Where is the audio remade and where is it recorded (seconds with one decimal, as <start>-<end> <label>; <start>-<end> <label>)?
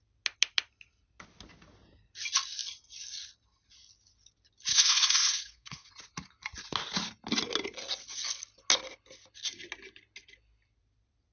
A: 0.0-4.7 recorded; 4.7-5.9 remade; 5.9-11.3 recorded